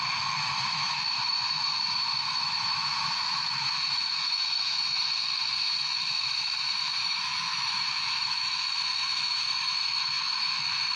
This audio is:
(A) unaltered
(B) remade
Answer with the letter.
B